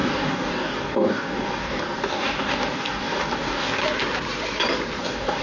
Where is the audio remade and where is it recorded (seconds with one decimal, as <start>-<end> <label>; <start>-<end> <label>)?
0.0-3.8 remade; 3.8-5.0 recorded; 5.0-5.4 remade